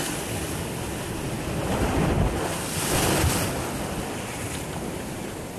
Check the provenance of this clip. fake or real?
real